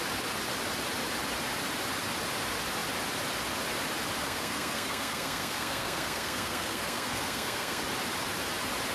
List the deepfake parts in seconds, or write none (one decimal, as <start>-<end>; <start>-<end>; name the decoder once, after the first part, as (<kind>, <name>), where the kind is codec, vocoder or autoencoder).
4.2-7.8 (codec, SNAC)